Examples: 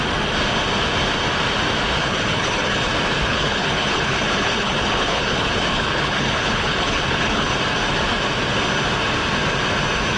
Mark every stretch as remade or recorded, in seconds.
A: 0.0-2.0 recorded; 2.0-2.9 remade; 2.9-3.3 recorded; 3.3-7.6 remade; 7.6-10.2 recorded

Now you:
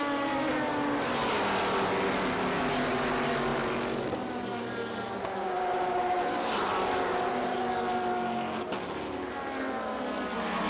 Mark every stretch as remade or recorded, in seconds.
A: 0.0-3.5 recorded; 3.5-7.6 remade; 7.6-10.7 recorded